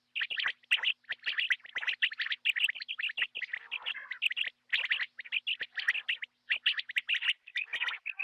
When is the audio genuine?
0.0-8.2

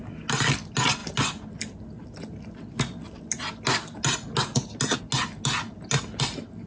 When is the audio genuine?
0.0-6.7

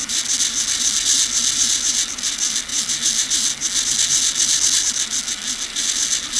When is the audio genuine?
0.0-6.4

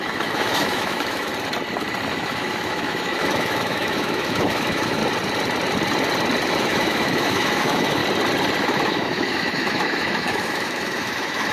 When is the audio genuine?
1.3-2.1; 5.0-6.5; 8.0-8.6

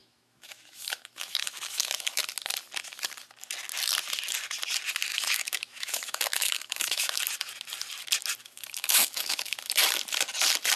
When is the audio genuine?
2.2-5.1; 7.2-8.4; 9.5-10.8